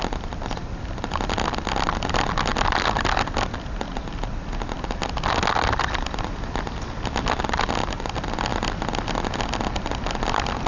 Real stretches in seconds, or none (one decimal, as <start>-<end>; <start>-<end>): 0.0-10.7